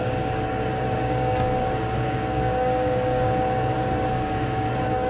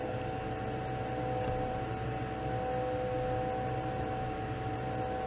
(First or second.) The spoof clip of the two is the first